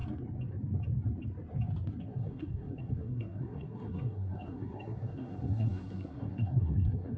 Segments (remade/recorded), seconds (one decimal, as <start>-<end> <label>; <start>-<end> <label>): 0.0-2.0 recorded; 2.0-7.2 remade